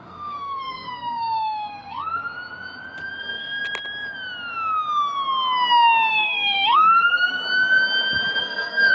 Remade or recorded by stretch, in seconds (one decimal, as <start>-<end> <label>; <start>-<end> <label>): 0.0-2.2 remade; 2.2-3.2 recorded; 3.2-3.6 remade; 3.6-6.1 recorded; 6.1-7.4 remade; 7.4-8.4 recorded; 8.4-8.9 remade